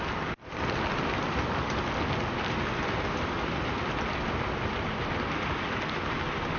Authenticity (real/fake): real